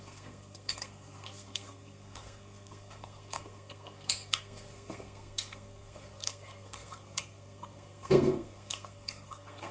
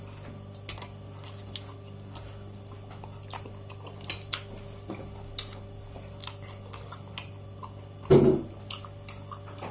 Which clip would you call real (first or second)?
second